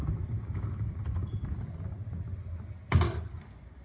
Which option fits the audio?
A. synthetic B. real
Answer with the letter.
B